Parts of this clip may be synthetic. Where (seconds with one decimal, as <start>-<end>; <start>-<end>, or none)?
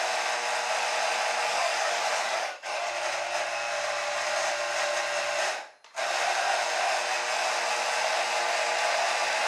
1.4-2.9